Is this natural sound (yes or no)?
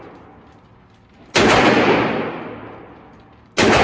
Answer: yes